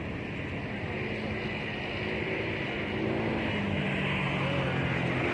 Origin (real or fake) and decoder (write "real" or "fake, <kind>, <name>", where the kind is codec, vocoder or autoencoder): real